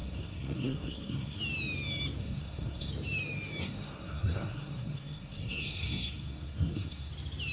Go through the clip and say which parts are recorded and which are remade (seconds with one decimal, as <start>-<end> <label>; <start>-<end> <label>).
0.0-1.4 remade; 1.4-2.2 recorded; 2.2-2.9 remade; 2.9-3.6 recorded; 3.6-7.1 remade; 7.1-7.5 recorded